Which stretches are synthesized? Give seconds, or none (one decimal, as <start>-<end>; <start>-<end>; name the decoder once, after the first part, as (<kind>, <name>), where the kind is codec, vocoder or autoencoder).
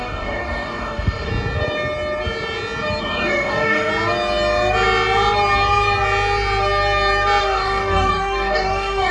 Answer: 0.0-1.3 (codec, DAC); 3.0-3.9; 7.4-9.1